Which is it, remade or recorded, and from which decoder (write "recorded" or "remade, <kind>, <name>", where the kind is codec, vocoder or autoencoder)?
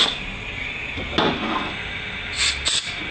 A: recorded